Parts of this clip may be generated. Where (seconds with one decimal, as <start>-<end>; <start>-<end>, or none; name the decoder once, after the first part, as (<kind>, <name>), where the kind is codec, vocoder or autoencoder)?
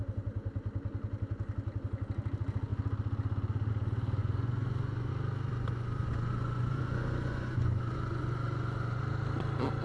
4.2-5.1 (vocoder, Vocos); 5.5-9.0